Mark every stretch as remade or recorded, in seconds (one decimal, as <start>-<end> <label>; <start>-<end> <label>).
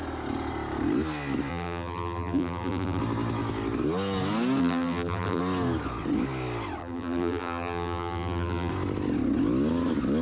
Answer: 0.0-1.5 recorded; 1.5-3.0 remade; 3.0-4.6 recorded; 4.6-5.4 remade; 5.4-6.8 recorded; 6.8-8.7 remade; 8.7-10.2 recorded